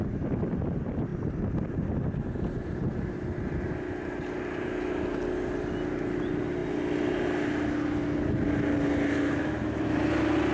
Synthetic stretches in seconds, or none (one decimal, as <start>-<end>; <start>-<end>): none